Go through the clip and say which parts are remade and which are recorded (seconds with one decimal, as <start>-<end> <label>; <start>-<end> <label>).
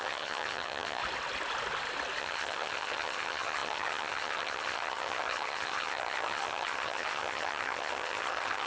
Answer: 0.0-1.0 remade; 1.0-2.2 recorded; 2.2-8.7 remade